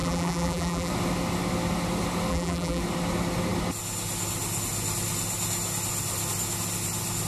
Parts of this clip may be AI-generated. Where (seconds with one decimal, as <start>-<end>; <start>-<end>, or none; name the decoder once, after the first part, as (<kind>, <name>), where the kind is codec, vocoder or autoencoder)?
0.0-0.9 (vocoder, BigVGAN v2); 2.3-2.8